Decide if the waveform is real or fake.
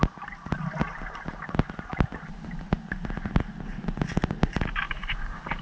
real